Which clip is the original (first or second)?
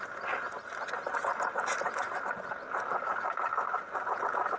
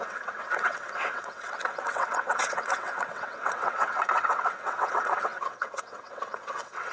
first